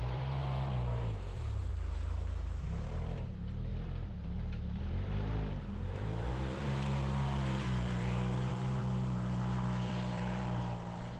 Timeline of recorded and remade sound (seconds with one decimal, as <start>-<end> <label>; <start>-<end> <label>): 0.0-1.7 remade; 1.7-2.6 recorded; 2.6-11.2 remade